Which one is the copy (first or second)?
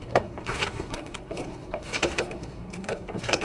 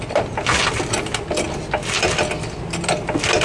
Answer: first